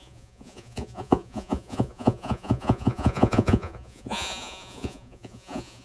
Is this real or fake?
fake